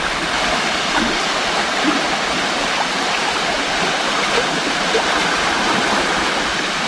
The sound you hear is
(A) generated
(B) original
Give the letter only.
B